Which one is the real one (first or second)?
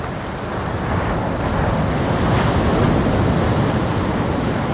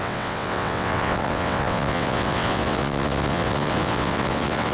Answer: first